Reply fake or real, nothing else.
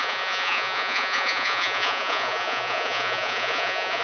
fake